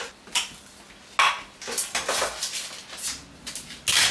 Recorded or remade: recorded